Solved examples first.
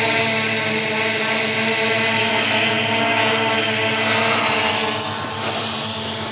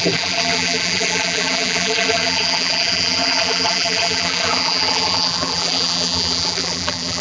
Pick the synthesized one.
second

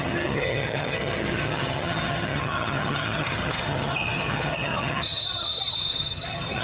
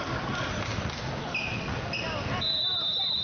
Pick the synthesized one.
first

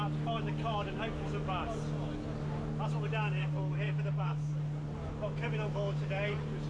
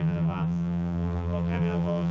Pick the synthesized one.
second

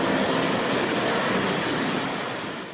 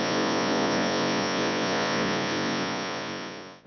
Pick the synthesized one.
second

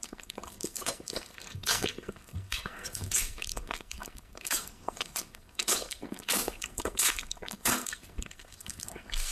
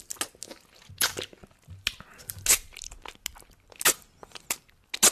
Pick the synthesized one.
first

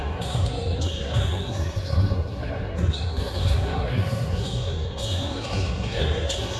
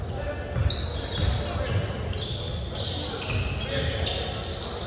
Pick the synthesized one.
first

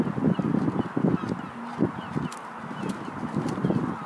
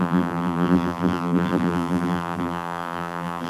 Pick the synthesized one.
second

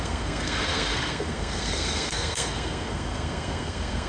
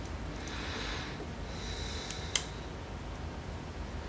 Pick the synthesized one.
first